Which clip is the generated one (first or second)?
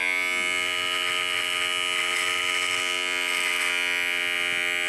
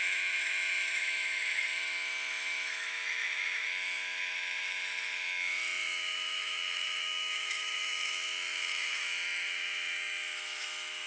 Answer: second